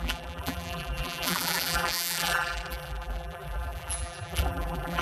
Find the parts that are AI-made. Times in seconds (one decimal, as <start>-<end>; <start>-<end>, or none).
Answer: 0.0-5.0